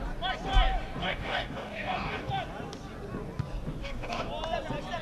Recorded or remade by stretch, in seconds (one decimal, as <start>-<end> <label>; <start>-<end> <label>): 0.0-1.0 recorded; 1.0-2.3 remade; 2.3-3.8 recorded; 3.8-4.3 remade; 4.3-5.0 recorded